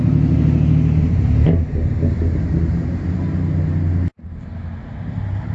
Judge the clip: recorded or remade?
recorded